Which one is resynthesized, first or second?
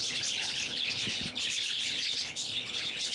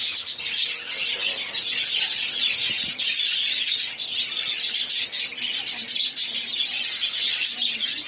first